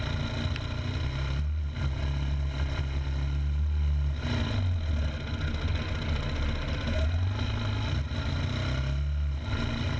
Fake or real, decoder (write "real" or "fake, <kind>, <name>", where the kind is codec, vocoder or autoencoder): real